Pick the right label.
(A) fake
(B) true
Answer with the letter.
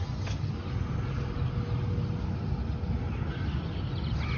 B